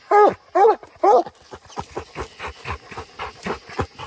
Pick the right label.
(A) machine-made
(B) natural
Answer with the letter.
B